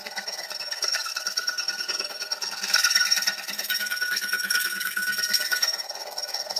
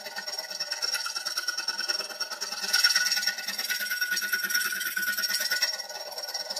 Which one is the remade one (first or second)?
first